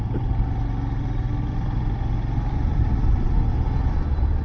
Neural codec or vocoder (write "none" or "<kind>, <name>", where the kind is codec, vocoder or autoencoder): none